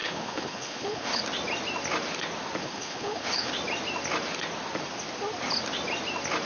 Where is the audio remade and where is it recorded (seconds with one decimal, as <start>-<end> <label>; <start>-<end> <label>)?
0.0-1.2 remade; 1.2-2.6 recorded; 2.6-3.5 remade; 3.5-6.5 recorded